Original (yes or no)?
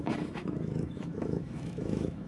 no